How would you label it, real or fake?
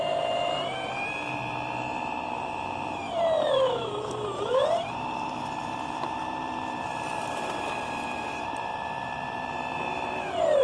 fake